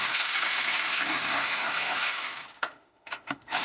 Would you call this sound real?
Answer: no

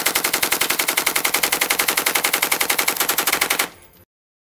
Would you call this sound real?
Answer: yes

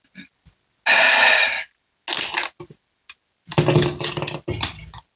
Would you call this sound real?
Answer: yes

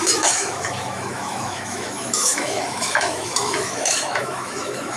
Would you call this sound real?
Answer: no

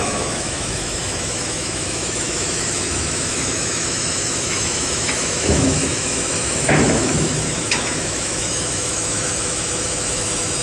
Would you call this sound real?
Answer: no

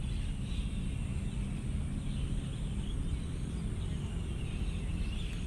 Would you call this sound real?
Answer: yes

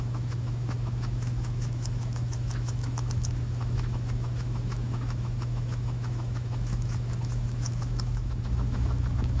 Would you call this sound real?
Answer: no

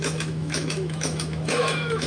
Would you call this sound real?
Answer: no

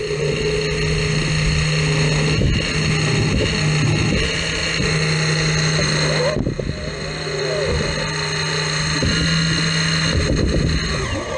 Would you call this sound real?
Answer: yes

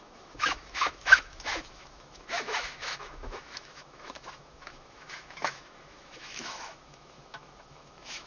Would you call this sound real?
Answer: no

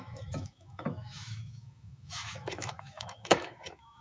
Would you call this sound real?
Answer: no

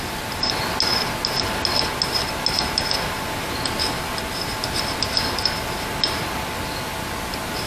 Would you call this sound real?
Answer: yes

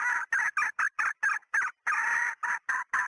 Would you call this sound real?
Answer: yes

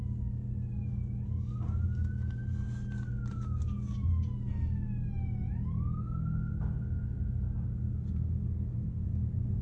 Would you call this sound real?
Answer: yes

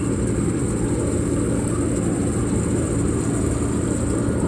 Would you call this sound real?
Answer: yes